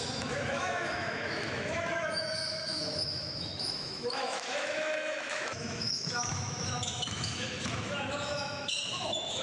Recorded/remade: remade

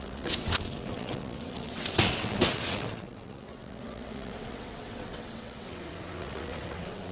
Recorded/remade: remade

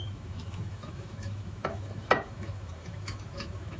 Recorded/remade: remade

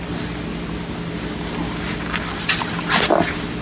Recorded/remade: recorded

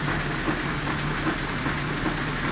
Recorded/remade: recorded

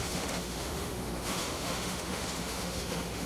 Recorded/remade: remade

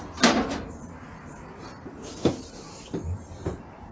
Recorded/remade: remade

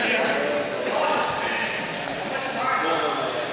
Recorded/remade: recorded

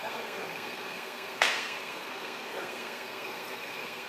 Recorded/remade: remade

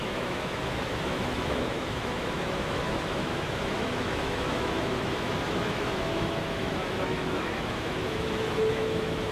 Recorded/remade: remade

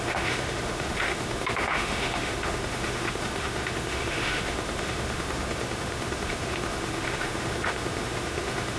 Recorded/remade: remade